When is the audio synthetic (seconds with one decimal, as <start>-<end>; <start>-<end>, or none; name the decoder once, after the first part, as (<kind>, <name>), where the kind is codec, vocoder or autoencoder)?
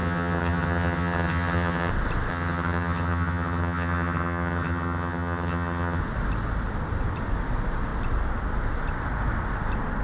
0.0-1.9 (vocoder, HiFi-GAN); 2.3-6.0